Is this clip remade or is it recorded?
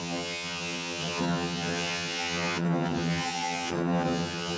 remade